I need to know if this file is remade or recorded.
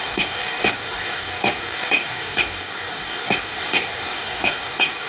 remade